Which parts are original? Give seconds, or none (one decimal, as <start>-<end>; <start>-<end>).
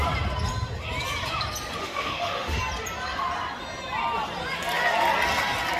0.0-1.8; 2.6-5.8